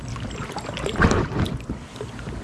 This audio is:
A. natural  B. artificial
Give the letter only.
A